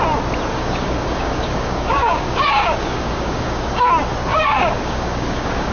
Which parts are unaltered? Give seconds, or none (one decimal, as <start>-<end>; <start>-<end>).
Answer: 0.0-0.5; 3.9-4.3